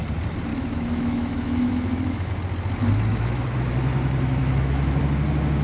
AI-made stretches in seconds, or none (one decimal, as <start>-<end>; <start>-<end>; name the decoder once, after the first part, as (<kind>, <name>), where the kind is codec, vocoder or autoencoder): 0.5-2.3 (autoencoder, DAC-VAE); 3.1-3.7; 4.4-5.0